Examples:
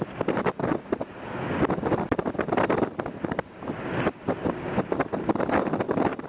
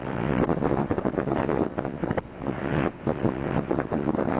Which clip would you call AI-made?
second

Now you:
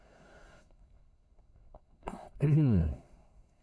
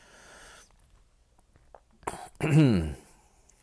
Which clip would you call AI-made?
first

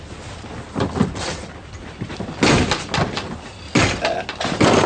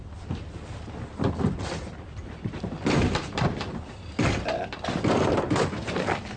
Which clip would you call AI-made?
second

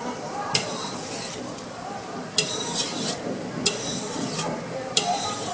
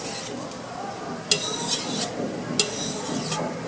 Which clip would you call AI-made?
first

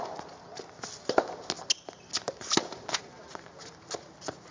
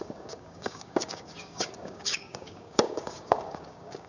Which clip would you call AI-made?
second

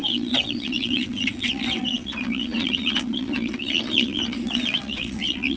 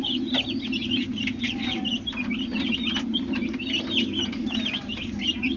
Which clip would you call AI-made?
first